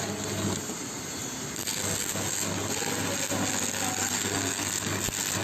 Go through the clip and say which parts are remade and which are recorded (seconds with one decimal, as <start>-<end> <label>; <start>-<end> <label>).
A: 0.0-4.0 recorded; 4.0-4.7 remade; 4.7-5.4 recorded